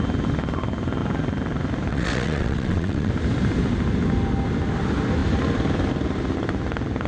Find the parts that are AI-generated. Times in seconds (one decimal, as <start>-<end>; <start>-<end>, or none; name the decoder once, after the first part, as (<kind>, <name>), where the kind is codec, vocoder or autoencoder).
1.9-3.1 (vocoder, WaveNeXt)